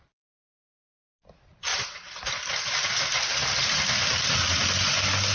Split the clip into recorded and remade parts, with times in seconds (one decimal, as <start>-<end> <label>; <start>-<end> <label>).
0.0-1.7 recorded; 1.7-2.5 remade; 2.5-3.6 recorded; 3.6-4.6 remade; 4.6-5.3 recorded